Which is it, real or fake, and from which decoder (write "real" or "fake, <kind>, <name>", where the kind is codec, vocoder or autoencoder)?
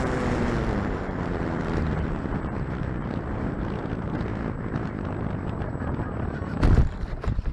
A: real